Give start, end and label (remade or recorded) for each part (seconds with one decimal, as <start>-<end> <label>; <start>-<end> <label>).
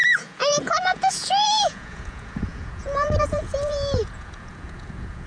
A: 0.0-5.3 remade